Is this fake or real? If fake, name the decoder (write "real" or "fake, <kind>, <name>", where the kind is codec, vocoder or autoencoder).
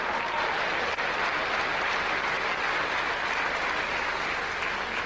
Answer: real